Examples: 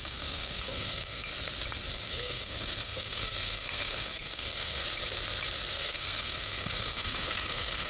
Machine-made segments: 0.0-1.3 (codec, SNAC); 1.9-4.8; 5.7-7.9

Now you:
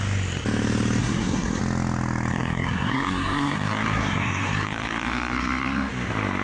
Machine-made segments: 1.0-1.6 (codec, SNAC); 2.3-5.9

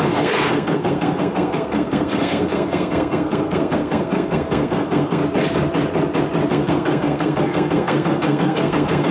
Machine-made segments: 0.0-5.2 (codec, SNAC); 6.5-9.1

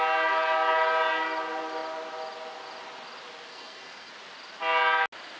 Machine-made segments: 3.5-4.1 (codec, SNAC)

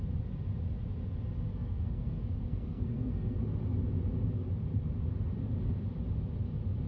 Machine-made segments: 1.5-3.4 (codec, SNAC)

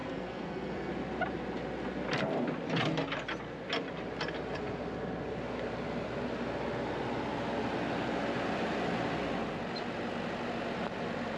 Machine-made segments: 0.0-0.9 (codec, SNAC)

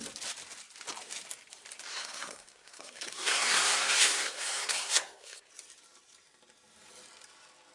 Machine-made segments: 1.9-5.5 (codec, SNAC)